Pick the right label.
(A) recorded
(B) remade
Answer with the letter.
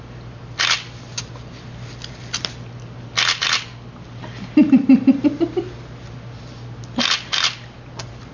A